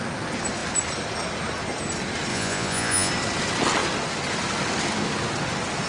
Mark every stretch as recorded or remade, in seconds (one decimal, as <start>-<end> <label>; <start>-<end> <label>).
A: 0.0-2.3 recorded; 2.3-3.1 remade; 3.1-5.9 recorded